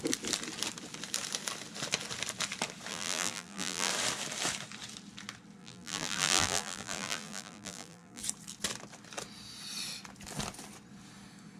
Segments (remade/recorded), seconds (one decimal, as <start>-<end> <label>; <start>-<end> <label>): 0.0-2.9 recorded; 2.9-3.9 remade; 3.9-5.6 recorded; 5.6-8.2 remade; 8.2-11.6 recorded